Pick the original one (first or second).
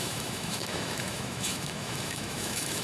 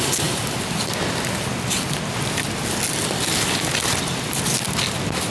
second